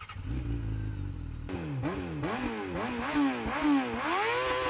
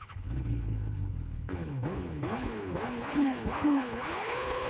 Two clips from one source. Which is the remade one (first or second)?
second